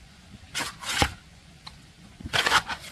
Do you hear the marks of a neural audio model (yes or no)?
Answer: yes